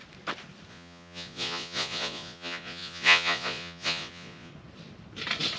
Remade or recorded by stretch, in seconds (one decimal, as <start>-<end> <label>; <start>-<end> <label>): 0.0-0.7 recorded; 0.7-4.5 remade; 4.5-5.6 recorded